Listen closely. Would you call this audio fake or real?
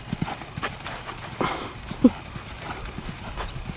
real